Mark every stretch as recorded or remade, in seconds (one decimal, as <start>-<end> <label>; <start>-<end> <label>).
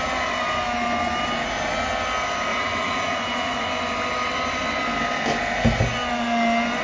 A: 0.0-2.5 recorded; 2.5-3.7 remade; 3.7-6.8 recorded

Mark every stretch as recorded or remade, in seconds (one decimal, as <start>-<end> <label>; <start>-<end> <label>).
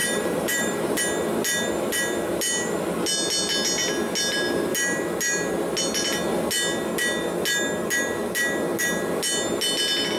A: 0.0-1.0 remade; 1.0-10.2 recorded